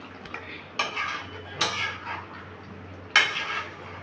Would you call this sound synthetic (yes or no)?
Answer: no